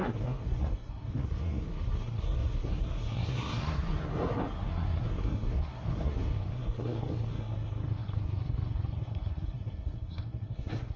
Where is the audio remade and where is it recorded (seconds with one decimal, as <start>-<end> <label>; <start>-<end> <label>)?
0.0-11.0 remade